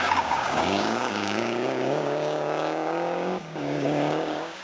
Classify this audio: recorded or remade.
remade